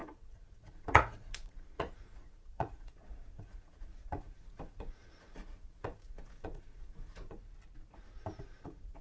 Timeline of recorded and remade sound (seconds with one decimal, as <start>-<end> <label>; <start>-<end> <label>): 0.0-7.4 remade; 7.4-8.4 recorded; 8.4-9.0 remade